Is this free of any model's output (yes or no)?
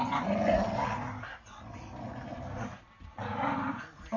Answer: yes